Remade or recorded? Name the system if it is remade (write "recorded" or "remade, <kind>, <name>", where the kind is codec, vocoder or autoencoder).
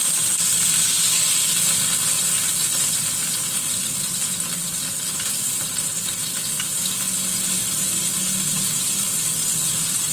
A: recorded